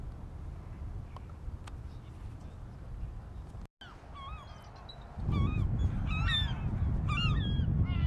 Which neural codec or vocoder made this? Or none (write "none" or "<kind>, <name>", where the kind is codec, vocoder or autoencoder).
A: none